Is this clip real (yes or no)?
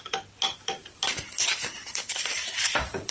yes